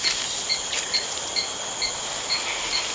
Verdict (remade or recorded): recorded